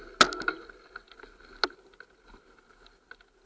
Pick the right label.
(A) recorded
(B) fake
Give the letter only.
A